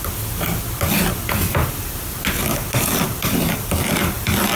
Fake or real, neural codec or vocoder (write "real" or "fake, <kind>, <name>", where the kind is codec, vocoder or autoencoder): real